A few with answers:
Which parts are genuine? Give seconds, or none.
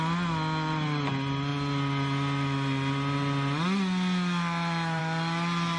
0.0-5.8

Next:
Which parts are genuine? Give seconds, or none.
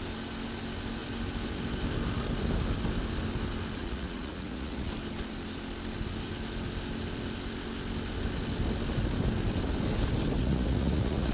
0.0-3.8; 4.9-10.4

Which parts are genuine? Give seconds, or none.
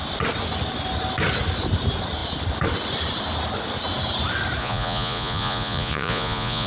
0.0-4.6